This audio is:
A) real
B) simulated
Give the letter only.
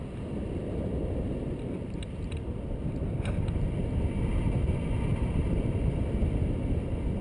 A